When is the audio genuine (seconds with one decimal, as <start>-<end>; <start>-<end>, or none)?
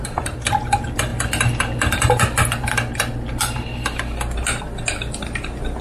0.0-5.8